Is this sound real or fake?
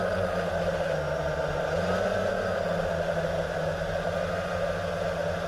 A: real